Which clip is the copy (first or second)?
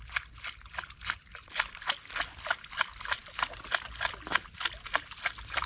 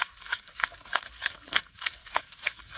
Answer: second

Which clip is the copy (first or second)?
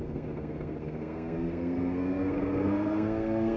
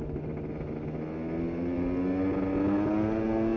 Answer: first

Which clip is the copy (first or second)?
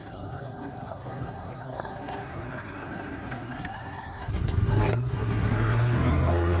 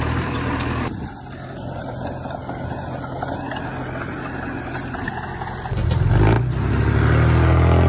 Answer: first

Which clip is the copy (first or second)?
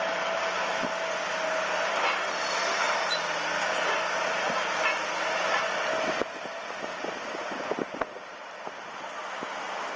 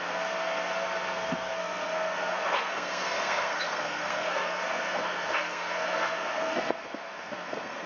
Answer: second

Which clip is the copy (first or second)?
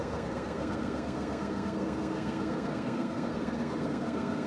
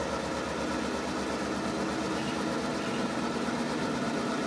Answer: first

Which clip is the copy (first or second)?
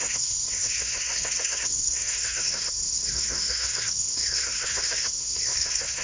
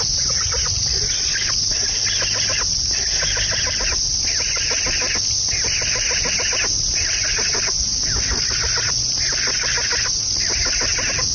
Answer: first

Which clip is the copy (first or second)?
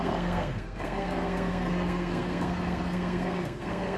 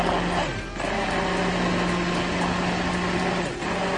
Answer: first